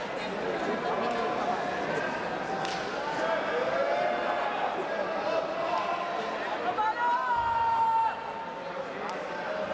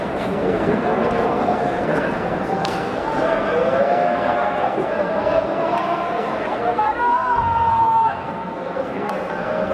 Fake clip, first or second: second